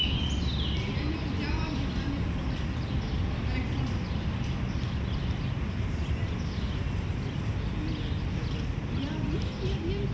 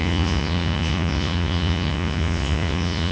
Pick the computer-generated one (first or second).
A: second